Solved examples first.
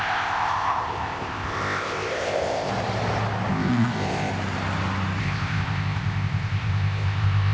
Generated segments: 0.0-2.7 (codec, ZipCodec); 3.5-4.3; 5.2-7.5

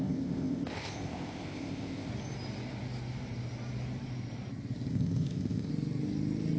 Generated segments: 0.0-2.1 (codec, ZipCodec); 4.9-5.7

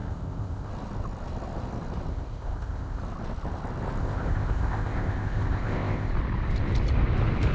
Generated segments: 0.0-0.7 (codec, ZipCodec); 2.1-3.0; 4.0-6.1

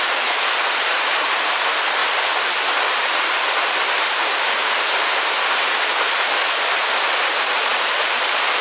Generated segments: none